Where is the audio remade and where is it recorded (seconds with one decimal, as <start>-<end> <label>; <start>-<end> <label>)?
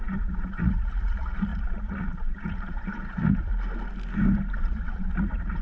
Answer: 0.0-3.5 remade; 3.5-4.6 recorded; 4.6-5.6 remade